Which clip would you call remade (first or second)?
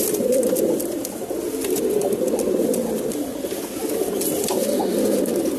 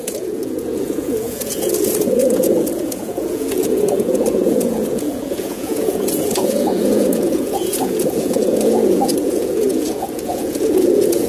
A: second